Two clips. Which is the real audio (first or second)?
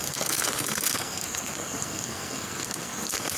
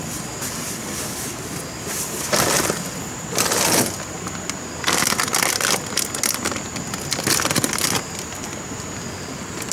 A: second